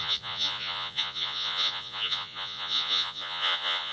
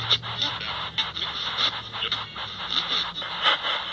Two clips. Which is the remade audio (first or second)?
first